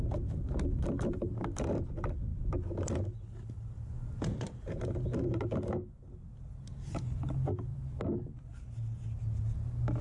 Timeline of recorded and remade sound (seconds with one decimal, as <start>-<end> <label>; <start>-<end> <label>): 0.0-7.7 recorded; 7.7-8.6 remade; 8.6-10.0 recorded